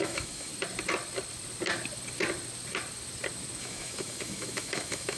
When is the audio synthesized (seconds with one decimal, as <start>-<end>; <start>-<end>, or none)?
0.0-0.5; 3.6-5.2